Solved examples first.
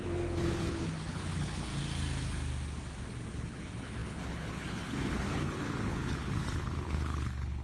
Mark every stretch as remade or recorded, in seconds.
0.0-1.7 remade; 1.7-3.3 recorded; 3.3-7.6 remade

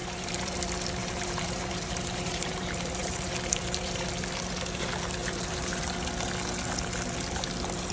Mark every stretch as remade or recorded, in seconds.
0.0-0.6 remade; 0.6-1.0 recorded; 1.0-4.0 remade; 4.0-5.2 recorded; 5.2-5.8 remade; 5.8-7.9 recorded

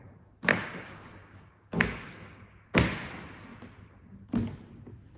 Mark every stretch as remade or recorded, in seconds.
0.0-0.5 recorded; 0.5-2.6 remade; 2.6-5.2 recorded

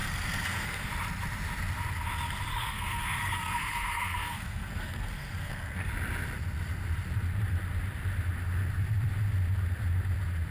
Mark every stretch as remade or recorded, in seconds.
0.0-0.9 remade; 0.9-2.5 recorded; 2.5-5.9 remade; 5.9-10.5 recorded

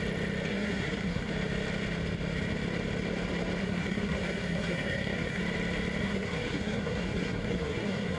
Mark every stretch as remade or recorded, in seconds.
0.0-0.5 recorded; 0.5-1.3 remade; 1.3-3.6 recorded; 3.6-5.4 remade; 5.4-6.0 recorded; 6.0-8.2 remade